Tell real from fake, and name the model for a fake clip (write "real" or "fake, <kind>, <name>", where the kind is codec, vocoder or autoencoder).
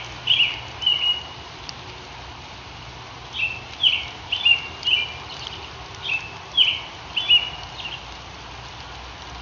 real